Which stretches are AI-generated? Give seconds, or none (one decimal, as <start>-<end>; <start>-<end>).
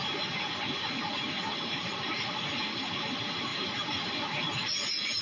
1.5-2.4; 3.5-4.1